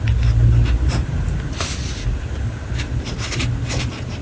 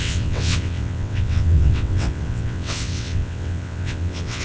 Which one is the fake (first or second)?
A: second